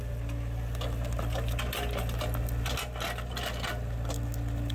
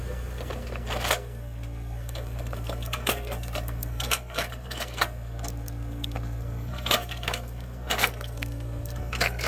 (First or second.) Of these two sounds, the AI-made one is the second